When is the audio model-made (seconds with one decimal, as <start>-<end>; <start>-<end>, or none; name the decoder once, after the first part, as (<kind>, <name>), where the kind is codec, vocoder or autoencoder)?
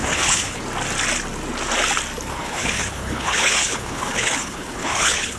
0.0-0.6 (codec, HILCodec); 2.3-5.4